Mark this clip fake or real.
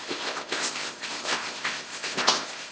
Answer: fake